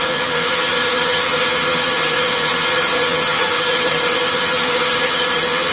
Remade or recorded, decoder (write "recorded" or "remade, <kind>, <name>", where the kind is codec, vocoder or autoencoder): remade, vocoder, HiFi-GAN